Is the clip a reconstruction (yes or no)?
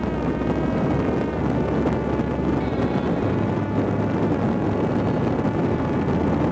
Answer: no